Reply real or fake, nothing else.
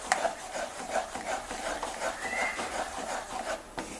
fake